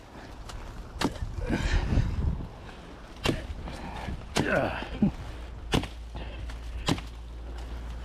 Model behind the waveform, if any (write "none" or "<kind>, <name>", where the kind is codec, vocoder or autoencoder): none